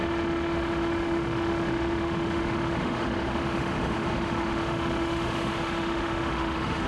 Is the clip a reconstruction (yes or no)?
yes